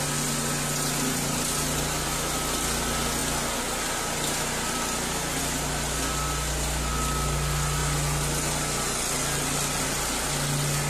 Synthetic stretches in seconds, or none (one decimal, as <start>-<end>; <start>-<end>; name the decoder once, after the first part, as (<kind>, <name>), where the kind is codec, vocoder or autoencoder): none